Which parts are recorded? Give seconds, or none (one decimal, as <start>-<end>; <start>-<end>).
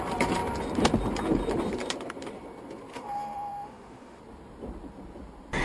0.0-2.9; 4.2-5.6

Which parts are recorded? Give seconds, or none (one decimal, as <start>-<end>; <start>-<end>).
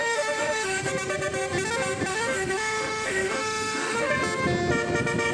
0.9-2.1; 4.1-5.3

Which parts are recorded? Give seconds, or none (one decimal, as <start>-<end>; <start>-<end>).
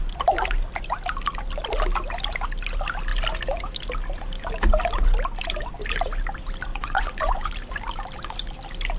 0.0-6.7; 7.5-9.0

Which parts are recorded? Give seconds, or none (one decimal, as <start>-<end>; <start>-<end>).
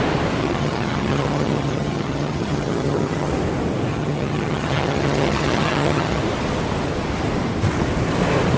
0.0-0.4; 3.3-3.9; 6.2-8.6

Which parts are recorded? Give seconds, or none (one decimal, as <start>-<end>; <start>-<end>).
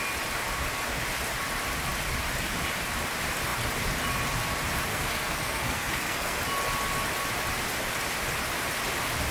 0.0-4.9; 6.4-9.3